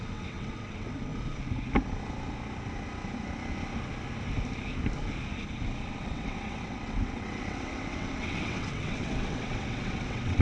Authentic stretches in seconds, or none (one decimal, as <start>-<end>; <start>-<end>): 1.1-5.9